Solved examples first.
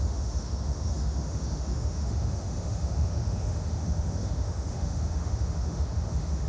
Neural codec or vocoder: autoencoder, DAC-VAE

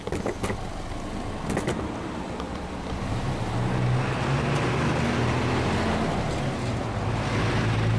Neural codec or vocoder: none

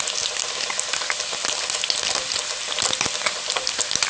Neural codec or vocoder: none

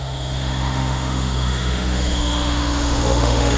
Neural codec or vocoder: autoencoder, DAC-VAE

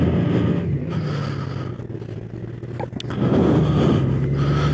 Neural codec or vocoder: none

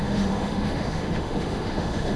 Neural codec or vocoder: autoencoder, DAC-VAE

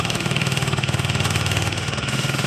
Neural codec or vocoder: autoencoder, DAC-VAE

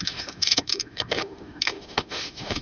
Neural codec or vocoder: autoencoder, DAC-VAE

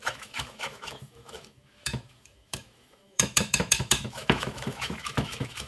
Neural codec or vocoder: autoencoder, DAC-VAE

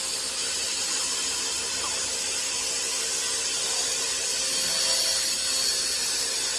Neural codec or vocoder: none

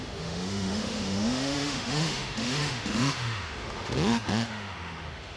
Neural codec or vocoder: autoencoder, DAC-VAE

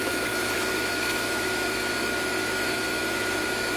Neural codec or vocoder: autoencoder, DAC-VAE